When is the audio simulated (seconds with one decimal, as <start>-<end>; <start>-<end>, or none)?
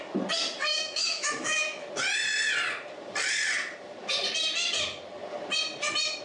0.7-1.9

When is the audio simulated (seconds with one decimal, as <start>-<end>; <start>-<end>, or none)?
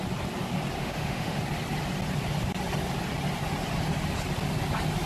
0.8-1.4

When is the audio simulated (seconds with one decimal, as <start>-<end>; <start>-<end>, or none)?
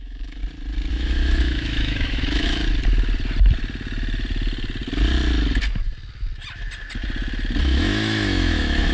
0.0-0.4; 0.9-2.6; 7.6-8.9